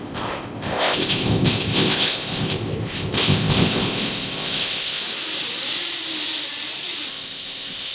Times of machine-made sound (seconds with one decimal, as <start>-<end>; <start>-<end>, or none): 0.0-5.0; 7.1-7.9